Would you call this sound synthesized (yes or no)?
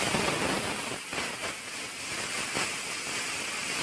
no